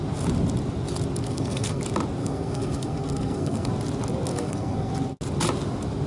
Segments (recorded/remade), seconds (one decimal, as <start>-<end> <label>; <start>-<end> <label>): 0.0-1.2 recorded; 1.2-1.8 remade; 1.8-2.2 recorded; 2.2-3.7 remade; 3.7-4.3 recorded; 4.3-4.9 remade; 4.9-6.1 recorded